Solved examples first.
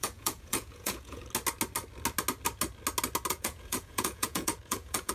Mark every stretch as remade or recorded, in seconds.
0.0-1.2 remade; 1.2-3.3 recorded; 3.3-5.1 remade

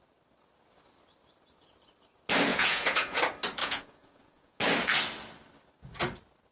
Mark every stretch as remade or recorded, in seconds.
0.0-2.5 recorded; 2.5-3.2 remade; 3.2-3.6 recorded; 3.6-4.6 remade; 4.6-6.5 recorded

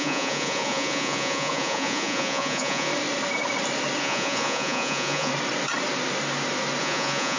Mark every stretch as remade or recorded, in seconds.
0.0-2.9 remade; 2.9-4.0 recorded; 4.0-5.3 remade; 5.3-6.8 recorded; 6.8-7.4 remade

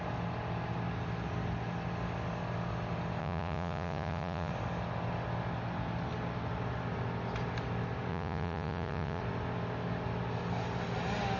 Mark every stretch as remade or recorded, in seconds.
0.0-3.2 recorded; 3.2-4.5 remade; 4.5-8.1 recorded; 8.1-9.2 remade; 9.2-11.4 recorded

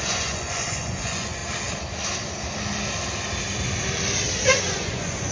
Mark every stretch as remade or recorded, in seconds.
0.0-1.4 remade; 1.4-4.6 recorded; 4.6-5.3 remade

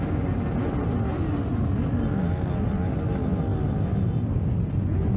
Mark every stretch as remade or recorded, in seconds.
0.0-5.2 recorded

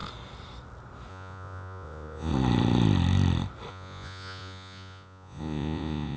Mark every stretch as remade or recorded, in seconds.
0.0-1.1 recorded; 1.1-2.3 remade; 2.3-3.7 recorded; 3.7-6.2 remade

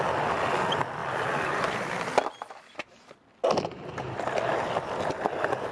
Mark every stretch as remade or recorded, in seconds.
0.0-5.7 recorded